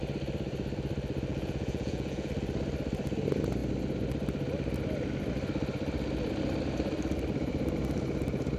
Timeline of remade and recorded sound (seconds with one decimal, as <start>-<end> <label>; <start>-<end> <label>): 0.0-1.3 recorded; 1.3-2.3 remade; 2.3-8.6 recorded